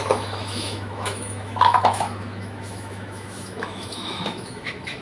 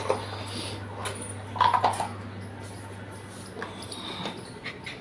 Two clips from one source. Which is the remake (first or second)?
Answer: first